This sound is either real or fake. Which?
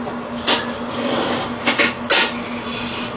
real